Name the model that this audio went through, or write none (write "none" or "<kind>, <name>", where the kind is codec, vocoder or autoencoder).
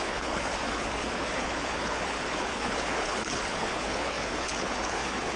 codec, HILCodec